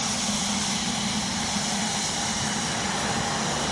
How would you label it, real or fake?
real